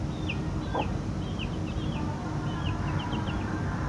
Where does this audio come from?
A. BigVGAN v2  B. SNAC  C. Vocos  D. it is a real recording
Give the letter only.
D